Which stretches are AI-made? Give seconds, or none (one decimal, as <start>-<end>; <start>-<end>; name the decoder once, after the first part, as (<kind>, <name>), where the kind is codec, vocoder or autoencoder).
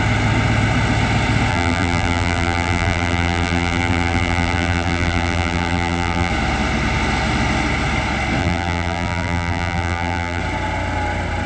1.5-6.3 (vocoder, BigVGAN v2); 8.4-10.4